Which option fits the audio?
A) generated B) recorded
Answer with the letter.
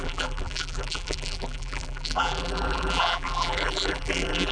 A